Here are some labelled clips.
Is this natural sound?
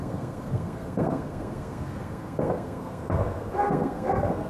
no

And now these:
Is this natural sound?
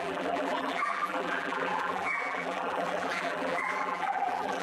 no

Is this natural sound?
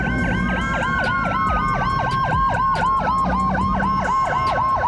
yes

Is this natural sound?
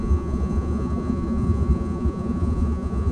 no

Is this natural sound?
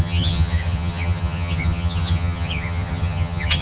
no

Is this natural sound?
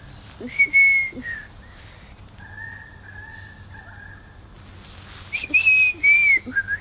yes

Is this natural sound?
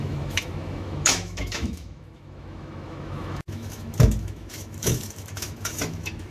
no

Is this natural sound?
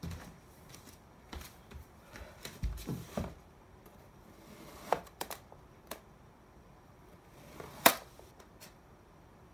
no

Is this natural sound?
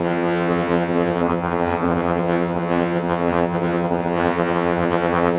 no